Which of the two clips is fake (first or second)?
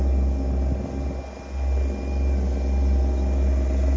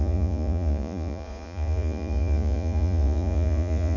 second